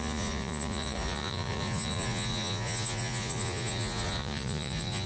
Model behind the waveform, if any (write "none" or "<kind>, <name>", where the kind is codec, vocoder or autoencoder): vocoder, Vocos